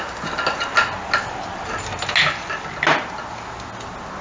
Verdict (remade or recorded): recorded